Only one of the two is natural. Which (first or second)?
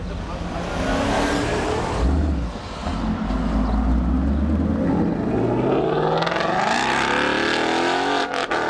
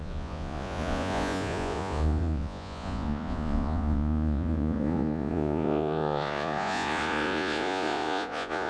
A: first